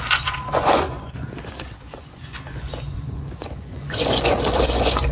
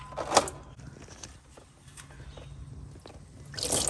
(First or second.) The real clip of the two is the second